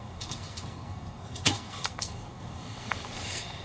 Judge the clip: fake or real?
fake